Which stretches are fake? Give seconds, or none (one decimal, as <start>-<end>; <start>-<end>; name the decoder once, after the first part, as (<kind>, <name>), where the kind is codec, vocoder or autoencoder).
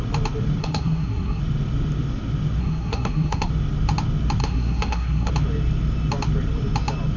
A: 0.6-1.4 (codec, SNAC); 2.6-3.5; 4.4-5.3